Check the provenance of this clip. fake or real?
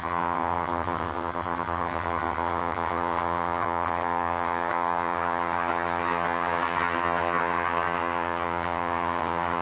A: fake